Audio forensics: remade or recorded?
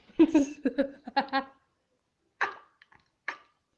remade